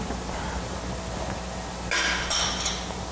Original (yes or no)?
yes